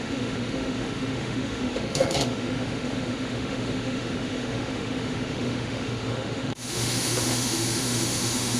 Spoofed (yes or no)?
yes